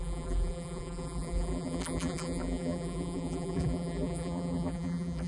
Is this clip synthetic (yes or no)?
yes